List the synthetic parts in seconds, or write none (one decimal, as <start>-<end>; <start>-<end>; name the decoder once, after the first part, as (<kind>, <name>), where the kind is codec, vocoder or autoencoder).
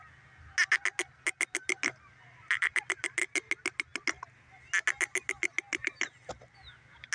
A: none